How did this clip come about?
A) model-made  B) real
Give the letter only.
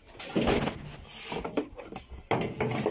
B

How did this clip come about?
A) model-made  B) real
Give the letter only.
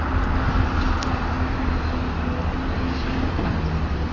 B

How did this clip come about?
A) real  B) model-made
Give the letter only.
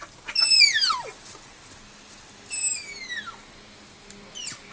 A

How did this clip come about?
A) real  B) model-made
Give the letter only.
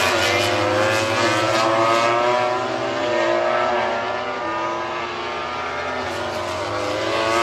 A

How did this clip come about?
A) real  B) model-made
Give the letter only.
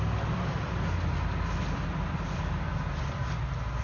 A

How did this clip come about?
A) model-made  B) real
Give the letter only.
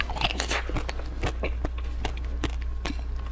B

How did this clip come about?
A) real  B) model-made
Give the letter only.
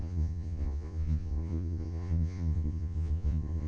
B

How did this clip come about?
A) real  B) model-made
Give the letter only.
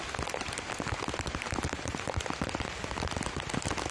A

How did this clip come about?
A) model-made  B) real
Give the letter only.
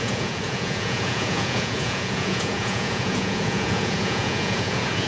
A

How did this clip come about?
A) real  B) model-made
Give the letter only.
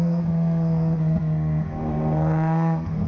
B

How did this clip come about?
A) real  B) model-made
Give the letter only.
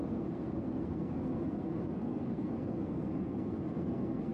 B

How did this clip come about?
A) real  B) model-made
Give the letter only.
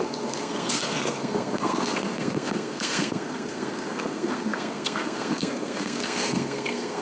B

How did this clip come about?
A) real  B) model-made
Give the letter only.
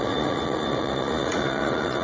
B